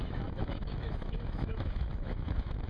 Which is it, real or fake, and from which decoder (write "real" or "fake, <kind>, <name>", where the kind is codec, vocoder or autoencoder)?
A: fake, autoencoder, DAC-VAE